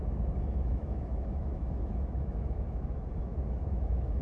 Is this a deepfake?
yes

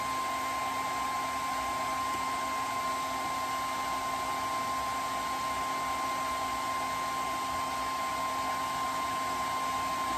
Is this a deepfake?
no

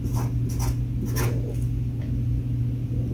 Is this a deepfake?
no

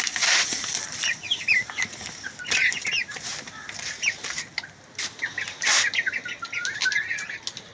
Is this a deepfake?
no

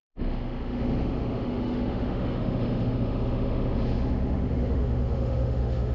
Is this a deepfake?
yes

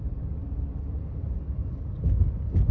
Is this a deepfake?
no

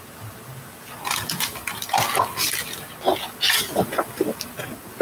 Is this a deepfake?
no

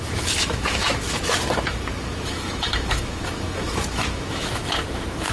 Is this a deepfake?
yes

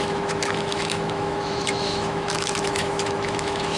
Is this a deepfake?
yes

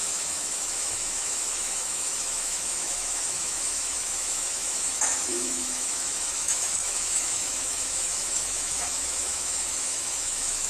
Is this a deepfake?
yes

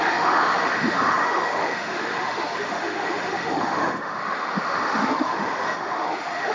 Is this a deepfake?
yes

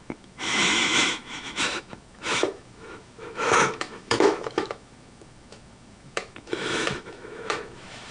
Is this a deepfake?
yes